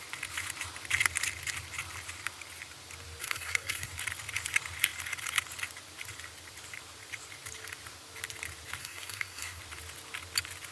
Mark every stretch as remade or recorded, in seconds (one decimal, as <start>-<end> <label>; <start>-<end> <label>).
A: 0.0-3.2 recorded; 3.2-3.9 remade; 3.9-8.8 recorded; 8.8-9.6 remade; 9.6-10.7 recorded

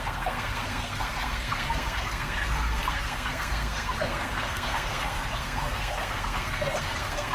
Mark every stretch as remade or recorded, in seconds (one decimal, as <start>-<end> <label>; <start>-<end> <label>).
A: 0.0-7.3 remade

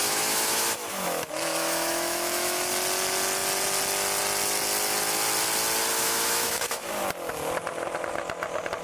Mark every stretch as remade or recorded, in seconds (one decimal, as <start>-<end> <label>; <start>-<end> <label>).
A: 0.0-2.7 remade; 2.7-5.9 recorded; 5.9-6.9 remade; 6.9-8.8 recorded

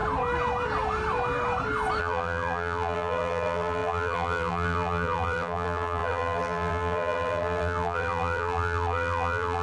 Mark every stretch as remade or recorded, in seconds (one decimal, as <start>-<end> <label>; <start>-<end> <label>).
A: 0.0-2.0 recorded; 2.0-9.6 remade